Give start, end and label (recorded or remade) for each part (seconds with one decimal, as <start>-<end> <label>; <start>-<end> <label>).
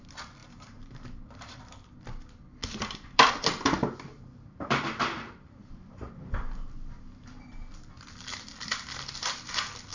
0.0-0.4 recorded; 0.4-1.6 remade; 1.6-2.6 recorded; 2.6-3.3 remade; 3.3-4.1 recorded; 4.1-6.1 remade; 6.1-9.9 recorded